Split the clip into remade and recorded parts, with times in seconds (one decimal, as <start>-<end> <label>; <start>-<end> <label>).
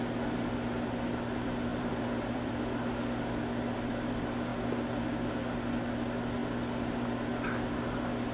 0.0-1.7 recorded; 1.7-2.5 remade; 2.5-8.3 recorded